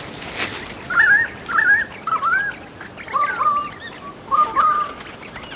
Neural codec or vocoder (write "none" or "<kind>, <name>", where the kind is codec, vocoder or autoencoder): none